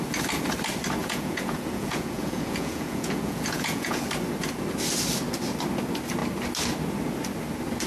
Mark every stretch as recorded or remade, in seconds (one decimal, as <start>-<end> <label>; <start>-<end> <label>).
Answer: 0.0-1.0 recorded; 1.0-4.1 remade; 4.1-7.9 recorded